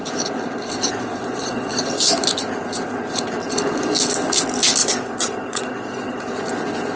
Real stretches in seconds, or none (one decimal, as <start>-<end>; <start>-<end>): 0.0-0.9; 1.8-4.8; 6.5-7.0